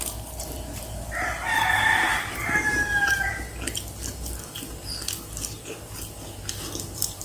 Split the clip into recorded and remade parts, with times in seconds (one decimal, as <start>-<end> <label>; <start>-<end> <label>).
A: 0.0-3.3 remade; 3.3-7.2 recorded